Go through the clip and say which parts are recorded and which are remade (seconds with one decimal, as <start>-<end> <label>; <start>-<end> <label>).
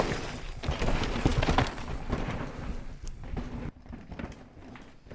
0.0-5.1 recorded